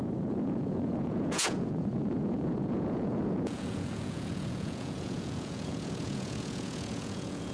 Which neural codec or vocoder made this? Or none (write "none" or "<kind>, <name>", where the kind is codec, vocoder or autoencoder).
vocoder, Vocos